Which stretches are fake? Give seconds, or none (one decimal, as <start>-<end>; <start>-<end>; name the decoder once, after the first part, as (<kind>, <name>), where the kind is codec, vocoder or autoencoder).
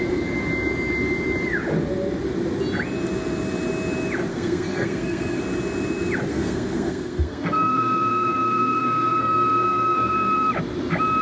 4.3-5.4 (codec, SNAC); 6.3-10.5